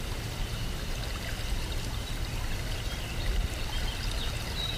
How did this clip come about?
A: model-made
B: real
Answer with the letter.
B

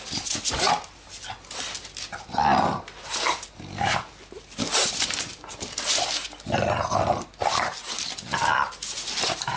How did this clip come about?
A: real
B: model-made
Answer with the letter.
A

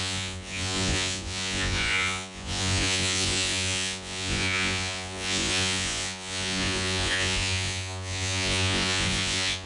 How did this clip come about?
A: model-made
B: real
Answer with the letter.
A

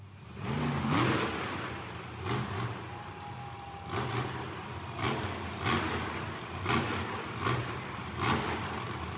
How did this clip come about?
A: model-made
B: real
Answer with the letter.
B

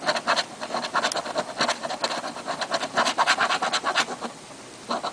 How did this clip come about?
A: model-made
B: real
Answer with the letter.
B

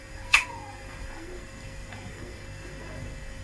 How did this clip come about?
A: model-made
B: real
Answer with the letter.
A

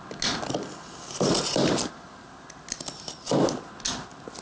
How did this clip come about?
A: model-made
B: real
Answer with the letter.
B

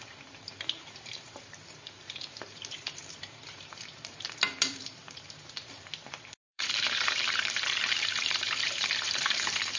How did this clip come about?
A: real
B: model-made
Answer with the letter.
B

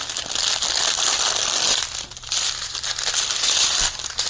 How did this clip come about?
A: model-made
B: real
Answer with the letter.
B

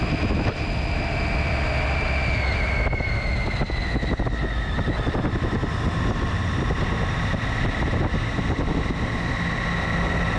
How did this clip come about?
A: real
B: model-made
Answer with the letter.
A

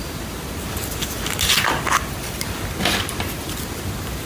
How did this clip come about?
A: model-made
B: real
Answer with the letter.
B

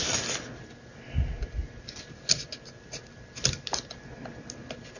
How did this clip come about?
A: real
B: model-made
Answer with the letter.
A